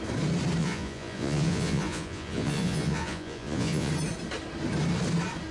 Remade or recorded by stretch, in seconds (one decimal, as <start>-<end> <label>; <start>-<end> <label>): 0.0-0.6 recorded; 0.6-3.9 remade; 3.9-5.5 recorded